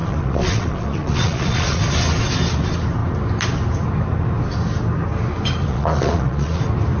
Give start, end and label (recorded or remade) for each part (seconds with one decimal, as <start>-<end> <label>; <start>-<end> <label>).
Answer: 0.0-1.8 remade; 1.8-5.7 recorded; 5.7-6.6 remade; 6.6-7.0 recorded